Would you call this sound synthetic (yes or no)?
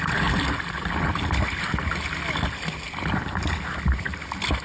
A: no